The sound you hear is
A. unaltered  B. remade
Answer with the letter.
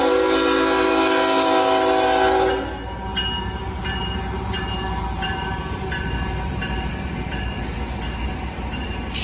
A